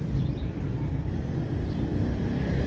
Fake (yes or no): yes